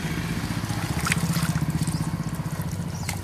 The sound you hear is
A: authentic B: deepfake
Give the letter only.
A